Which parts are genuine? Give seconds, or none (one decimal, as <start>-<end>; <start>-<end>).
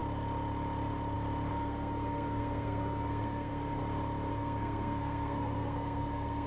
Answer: 0.0-1.5; 3.8-4.3